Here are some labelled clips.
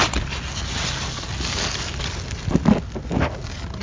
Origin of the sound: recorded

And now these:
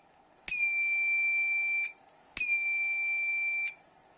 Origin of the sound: recorded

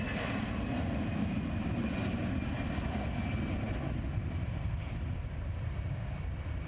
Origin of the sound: recorded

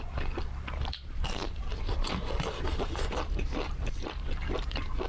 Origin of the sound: recorded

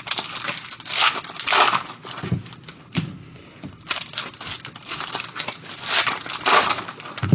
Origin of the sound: recorded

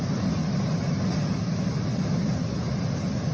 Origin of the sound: recorded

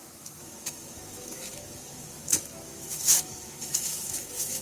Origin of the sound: remade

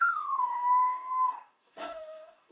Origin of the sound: remade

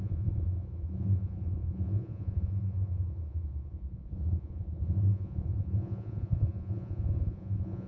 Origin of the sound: remade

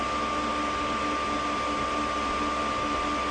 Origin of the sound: recorded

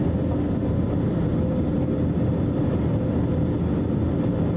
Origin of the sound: recorded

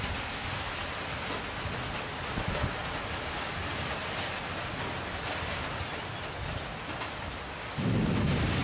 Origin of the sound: recorded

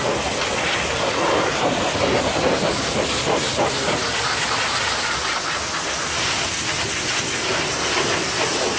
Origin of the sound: recorded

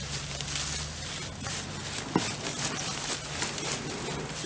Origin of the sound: recorded